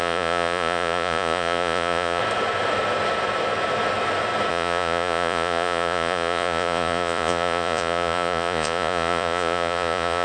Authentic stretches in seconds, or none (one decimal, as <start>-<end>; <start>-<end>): 2.2-4.5